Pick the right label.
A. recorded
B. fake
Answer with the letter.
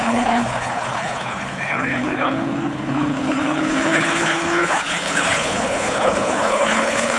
B